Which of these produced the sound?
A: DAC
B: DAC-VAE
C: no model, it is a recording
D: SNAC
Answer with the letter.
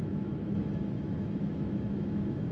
B